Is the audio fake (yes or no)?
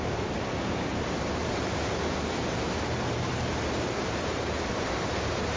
yes